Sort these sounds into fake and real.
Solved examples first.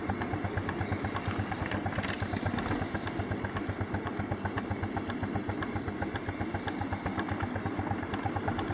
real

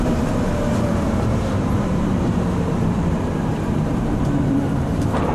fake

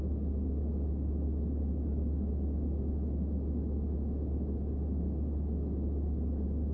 real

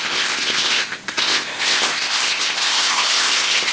fake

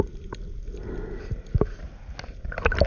real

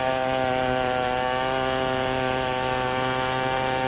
real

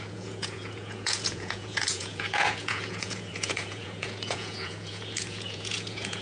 fake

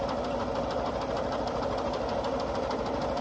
real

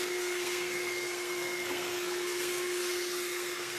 fake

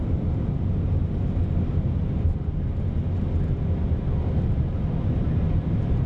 real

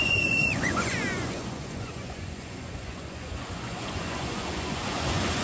fake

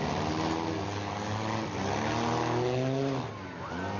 real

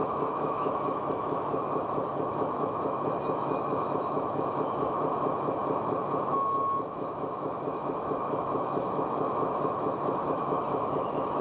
fake